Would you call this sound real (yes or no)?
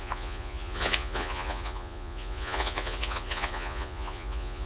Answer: no